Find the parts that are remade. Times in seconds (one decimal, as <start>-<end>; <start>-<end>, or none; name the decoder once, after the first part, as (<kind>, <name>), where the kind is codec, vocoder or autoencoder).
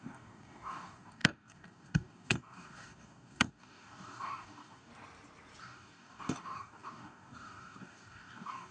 0.0-4.9 (codec, DAC); 5.6-8.7